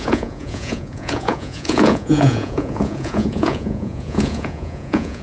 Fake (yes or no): yes